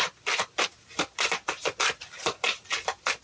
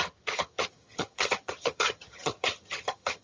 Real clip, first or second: first